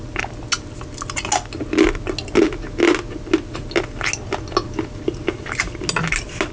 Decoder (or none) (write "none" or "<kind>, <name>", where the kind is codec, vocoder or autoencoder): none